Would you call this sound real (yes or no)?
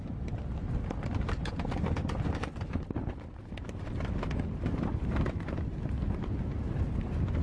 yes